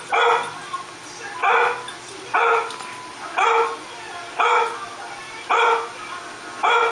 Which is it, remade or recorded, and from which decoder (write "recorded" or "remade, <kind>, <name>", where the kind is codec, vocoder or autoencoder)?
recorded